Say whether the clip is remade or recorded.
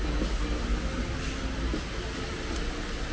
recorded